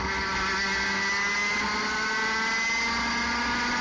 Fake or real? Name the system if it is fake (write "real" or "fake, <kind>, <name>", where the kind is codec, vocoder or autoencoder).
real